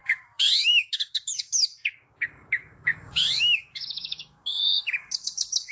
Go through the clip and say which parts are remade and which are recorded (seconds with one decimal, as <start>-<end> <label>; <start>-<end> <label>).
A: 0.0-5.7 remade